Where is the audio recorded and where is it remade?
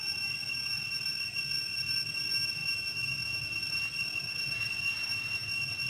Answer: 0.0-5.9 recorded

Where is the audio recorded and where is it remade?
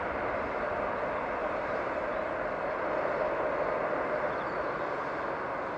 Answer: 0.0-5.8 recorded